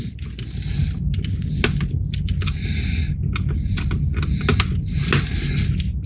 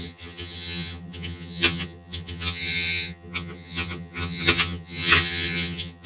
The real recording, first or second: first